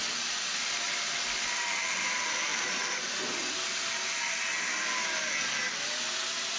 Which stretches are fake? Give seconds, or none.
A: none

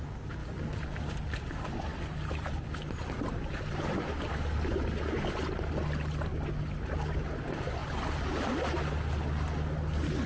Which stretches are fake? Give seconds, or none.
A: none